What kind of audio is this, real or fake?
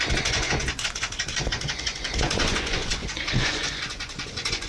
fake